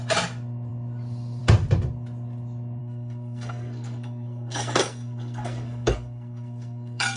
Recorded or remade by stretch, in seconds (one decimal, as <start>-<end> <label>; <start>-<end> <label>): 0.0-2.8 recorded; 2.8-7.2 remade

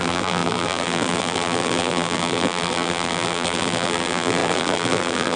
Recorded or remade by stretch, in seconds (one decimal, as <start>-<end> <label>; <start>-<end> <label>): 0.0-5.4 remade

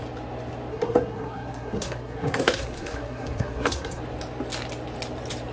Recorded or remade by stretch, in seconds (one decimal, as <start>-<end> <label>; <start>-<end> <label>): 0.0-0.7 recorded; 0.7-4.0 remade; 4.0-5.5 recorded

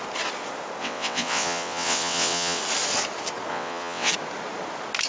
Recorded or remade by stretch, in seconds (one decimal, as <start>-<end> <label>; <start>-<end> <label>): 0.0-0.8 recorded; 0.8-2.6 remade; 2.6-3.5 recorded; 3.5-4.1 remade; 4.1-5.1 recorded

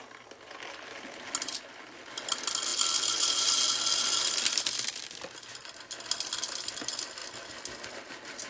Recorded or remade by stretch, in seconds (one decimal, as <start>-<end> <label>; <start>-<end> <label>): 0.0-8.5 recorded